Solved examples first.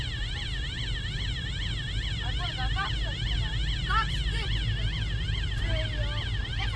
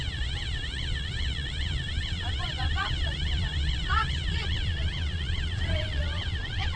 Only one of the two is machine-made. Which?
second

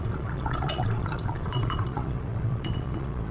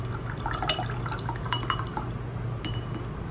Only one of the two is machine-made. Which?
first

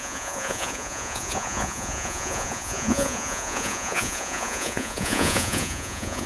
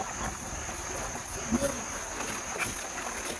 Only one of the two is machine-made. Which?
first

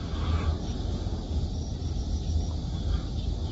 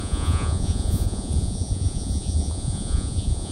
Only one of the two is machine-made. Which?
second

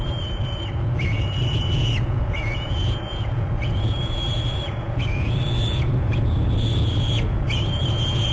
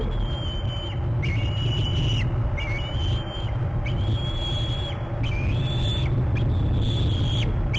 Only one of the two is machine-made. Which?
first